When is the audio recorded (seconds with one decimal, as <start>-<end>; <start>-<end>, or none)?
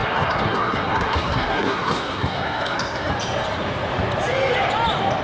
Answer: 3.1-5.2